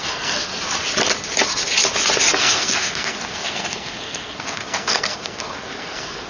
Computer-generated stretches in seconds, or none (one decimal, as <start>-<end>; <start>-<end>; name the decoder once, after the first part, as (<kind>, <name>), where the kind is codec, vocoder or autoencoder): 0.0-0.5 (codec, SNAC); 2.4-6.3